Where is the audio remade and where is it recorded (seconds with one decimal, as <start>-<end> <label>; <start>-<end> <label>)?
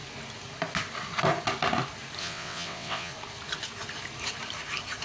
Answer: 0.0-2.2 recorded; 2.2-3.1 remade; 3.1-5.0 recorded